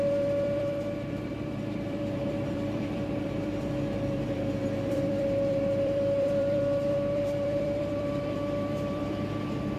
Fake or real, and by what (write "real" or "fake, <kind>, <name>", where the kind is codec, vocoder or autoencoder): fake, vocoder, BigVGAN v2